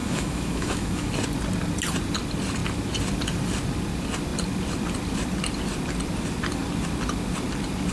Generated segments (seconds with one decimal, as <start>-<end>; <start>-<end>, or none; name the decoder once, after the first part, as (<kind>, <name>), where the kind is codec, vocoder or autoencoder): 0.0-1.1 (autoencoder, DAC-VAE)